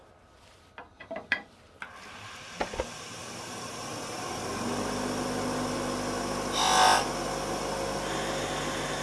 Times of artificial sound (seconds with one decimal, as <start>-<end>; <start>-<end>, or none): 0.9-1.6